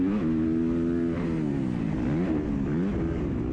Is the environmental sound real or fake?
real